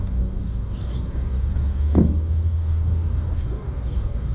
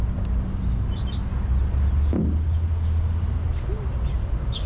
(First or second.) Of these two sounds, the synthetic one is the first